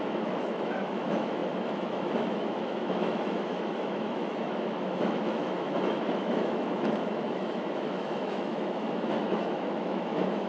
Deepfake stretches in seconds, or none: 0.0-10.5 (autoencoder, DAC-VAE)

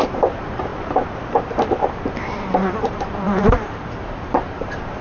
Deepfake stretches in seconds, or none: 0.0-0.7 (vocoder, BigVGAN v2); 2.4-5.0

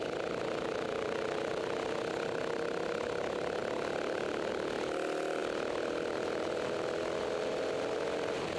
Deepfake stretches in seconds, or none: none